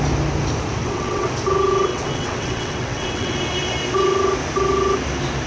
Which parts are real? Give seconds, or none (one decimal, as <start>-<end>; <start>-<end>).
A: 0.0-0.8; 1.3-1.9; 3.4-5.5